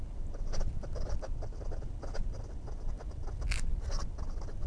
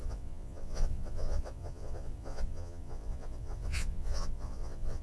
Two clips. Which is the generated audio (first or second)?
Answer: second